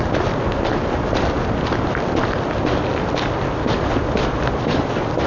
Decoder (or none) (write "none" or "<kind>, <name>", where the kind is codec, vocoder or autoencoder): vocoder, BigVGAN v2